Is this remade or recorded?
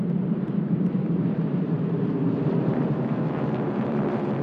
remade